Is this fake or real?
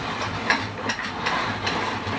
real